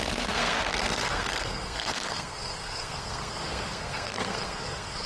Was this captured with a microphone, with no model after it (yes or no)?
no